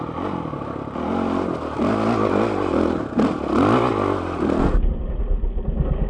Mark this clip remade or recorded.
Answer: recorded